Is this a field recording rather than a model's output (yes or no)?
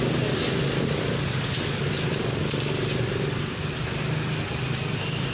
yes